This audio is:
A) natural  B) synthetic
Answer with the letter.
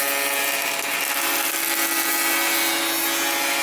A